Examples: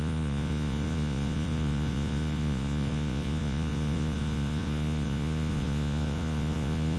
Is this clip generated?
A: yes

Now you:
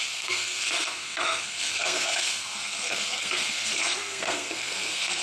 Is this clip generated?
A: yes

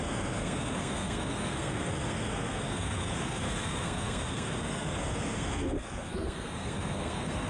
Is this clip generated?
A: yes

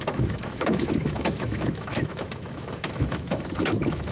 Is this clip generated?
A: yes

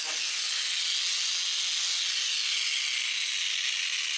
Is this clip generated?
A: no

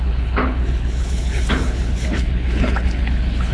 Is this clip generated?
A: yes